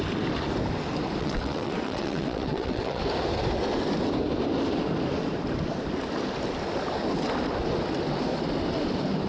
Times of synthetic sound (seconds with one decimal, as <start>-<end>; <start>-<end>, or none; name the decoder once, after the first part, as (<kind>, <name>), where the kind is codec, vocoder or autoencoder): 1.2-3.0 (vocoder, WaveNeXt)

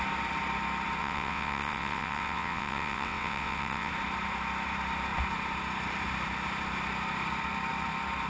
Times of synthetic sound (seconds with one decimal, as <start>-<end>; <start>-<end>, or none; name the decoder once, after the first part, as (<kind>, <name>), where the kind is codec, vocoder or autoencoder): 1.0-3.9 (vocoder, WaveNeXt)

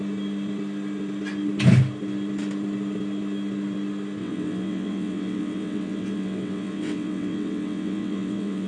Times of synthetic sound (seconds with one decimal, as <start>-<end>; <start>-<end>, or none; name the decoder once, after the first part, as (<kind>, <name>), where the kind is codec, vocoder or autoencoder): 4.2-8.7 (vocoder, WaveNeXt)

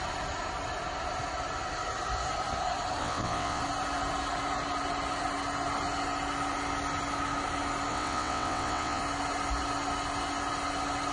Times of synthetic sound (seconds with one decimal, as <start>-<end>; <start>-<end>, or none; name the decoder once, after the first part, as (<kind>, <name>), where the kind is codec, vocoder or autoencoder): 3.0-3.6 (vocoder, WaveNeXt); 7.9-9.0

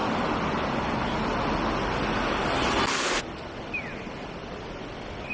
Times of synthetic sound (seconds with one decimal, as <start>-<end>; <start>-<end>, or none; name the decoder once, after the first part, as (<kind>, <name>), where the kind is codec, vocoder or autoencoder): none

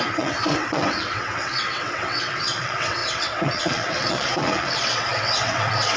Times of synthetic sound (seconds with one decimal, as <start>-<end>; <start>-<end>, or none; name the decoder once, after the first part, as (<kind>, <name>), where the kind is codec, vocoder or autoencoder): 0.0-6.0 (vocoder, WaveNeXt)

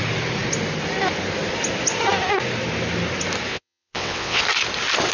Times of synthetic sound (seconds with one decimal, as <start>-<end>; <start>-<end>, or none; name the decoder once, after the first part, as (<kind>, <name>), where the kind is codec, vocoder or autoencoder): 3.5-4.4 (vocoder, WaveNeXt)

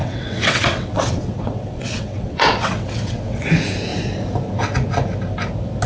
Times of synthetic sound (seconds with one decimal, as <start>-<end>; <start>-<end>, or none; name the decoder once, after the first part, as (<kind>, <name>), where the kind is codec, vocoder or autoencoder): 0.0-3.5 (vocoder, WaveNeXt)